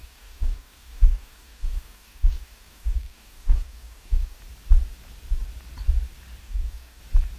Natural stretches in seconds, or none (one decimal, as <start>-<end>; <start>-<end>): 4.4-6.4; 7.0-7.4

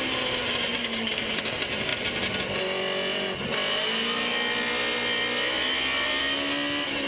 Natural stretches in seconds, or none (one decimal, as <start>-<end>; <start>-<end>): 0.0-0.8; 1.4-7.1

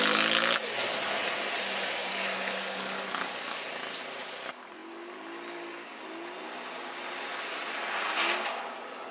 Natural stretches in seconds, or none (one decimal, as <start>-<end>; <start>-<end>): 0.0-2.1; 3.6-9.1

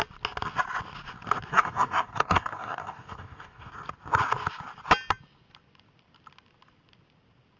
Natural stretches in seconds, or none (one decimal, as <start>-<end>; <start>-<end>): 0.0-1.5; 3.7-7.6

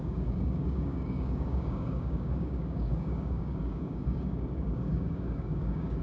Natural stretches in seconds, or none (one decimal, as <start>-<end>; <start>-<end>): none

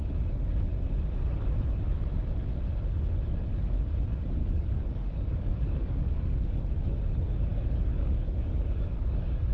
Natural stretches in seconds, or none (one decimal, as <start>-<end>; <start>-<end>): 0.0-4.4; 6.7-7.5